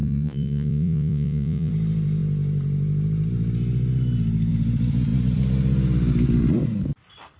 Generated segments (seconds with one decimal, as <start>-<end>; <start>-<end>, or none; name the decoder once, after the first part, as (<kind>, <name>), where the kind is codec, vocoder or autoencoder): 0.0-1.7 (vocoder, Vocos)